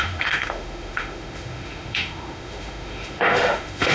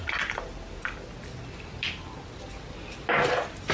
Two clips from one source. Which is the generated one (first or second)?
first